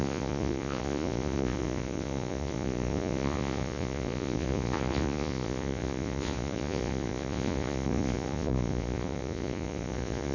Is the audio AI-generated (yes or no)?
yes